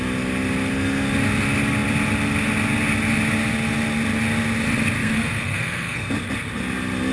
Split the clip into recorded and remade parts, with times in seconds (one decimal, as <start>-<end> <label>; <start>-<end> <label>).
0.0-5.0 recorded; 5.0-6.1 remade; 6.1-7.1 recorded